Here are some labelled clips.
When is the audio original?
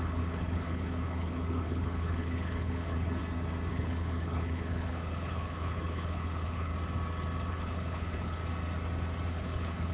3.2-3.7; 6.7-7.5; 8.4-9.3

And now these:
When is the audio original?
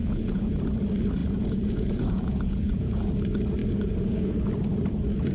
0.6-1.2; 3.1-3.6; 4.3-5.3